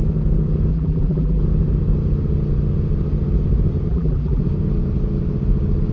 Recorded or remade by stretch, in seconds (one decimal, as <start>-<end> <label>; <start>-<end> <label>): 0.0-0.7 recorded; 0.7-1.4 remade; 1.4-3.9 recorded; 3.9-4.4 remade; 4.4-5.9 recorded

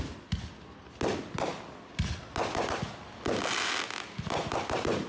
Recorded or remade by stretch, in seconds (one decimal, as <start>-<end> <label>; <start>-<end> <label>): 0.0-5.1 recorded

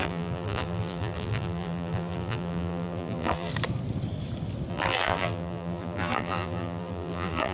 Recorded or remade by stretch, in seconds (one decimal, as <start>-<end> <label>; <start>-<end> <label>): 0.0-3.5 remade; 3.5-4.7 recorded; 4.7-7.5 remade